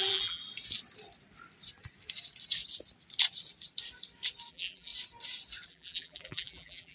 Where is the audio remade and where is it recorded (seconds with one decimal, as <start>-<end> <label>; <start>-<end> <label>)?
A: 0.0-0.4 remade; 0.4-4.5 recorded; 4.5-4.9 remade; 4.9-5.7 recorded; 5.7-6.9 remade